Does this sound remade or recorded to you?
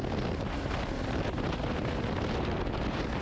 recorded